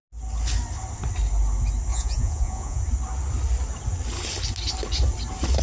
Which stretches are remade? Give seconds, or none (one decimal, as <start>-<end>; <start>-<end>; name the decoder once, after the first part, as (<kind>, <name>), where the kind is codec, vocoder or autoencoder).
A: 1.9-2.8 (vocoder, Vocos)